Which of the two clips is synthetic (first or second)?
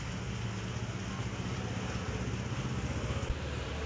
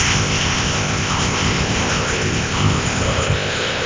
second